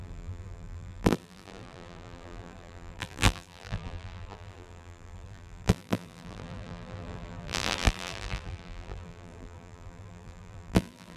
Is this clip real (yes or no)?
no